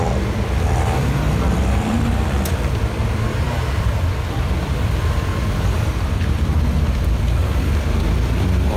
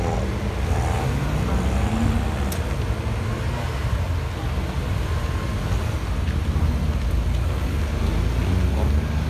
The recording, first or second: second